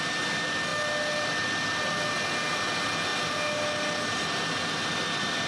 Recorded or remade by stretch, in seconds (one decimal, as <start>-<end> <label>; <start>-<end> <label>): 0.0-5.5 recorded